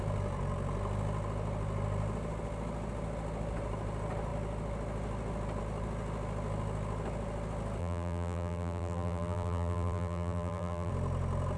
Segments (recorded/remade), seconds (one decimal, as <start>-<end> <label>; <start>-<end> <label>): 0.0-7.8 recorded; 7.8-10.9 remade; 10.9-11.6 recorded